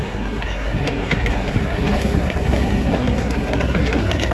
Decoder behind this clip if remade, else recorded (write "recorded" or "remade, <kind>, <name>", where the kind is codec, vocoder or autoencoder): remade, codec, SNAC